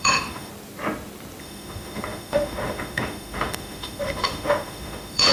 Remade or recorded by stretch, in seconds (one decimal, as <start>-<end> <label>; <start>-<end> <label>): 0.0-0.5 remade; 0.5-1.4 recorded; 1.4-5.3 remade